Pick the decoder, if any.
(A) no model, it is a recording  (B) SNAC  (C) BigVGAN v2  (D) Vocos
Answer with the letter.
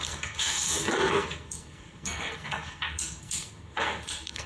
B